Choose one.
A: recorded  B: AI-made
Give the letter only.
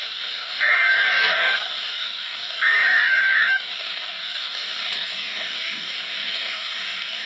B